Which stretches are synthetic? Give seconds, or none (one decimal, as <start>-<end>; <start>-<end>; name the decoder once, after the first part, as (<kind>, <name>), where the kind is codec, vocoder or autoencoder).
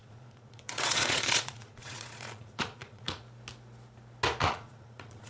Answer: 0.0-3.2 (vocoder, Vocos); 4.4-5.3